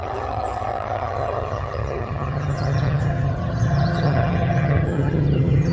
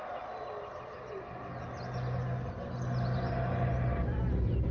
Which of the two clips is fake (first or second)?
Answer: first